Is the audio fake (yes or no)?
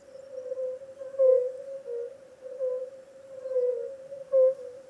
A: no